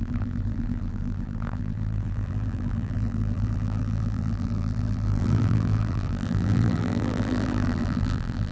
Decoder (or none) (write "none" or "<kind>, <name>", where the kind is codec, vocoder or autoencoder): vocoder, BigVGAN v2